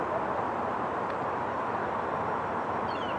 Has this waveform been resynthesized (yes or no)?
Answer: no